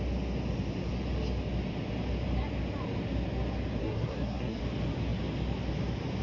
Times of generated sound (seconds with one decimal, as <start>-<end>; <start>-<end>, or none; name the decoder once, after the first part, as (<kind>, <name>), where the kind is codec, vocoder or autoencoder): 3.8-4.6 (codec, SNAC)